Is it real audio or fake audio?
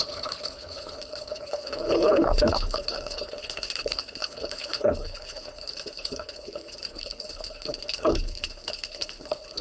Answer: fake